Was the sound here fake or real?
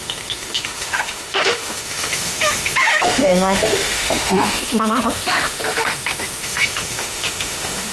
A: fake